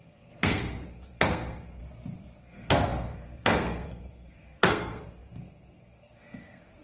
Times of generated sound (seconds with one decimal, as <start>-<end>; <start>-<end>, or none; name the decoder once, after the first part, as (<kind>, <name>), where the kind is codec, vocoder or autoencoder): 0.0-1.8 (codec, SNAC); 2.4-6.8